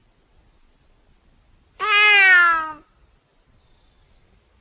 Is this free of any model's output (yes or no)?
yes